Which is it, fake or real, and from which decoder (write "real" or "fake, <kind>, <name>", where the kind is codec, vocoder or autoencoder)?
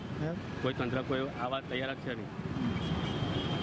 real